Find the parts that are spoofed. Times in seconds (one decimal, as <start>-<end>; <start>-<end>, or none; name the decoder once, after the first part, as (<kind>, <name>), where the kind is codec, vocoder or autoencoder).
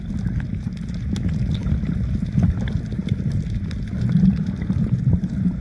none